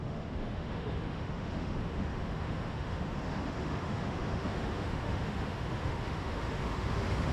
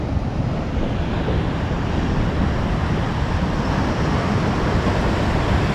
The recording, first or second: second